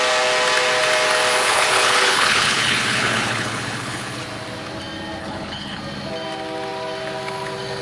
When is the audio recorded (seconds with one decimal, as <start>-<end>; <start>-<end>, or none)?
0.0-1.4; 4.2-5.2; 5.8-7.8